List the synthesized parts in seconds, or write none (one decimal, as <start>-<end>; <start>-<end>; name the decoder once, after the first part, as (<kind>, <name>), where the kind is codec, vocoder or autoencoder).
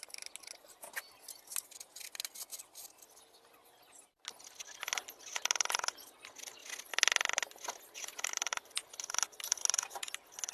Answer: none